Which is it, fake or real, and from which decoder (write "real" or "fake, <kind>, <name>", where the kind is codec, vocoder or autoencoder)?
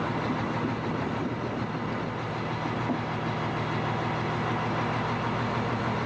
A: real